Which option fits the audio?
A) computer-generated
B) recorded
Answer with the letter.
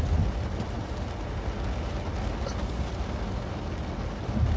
B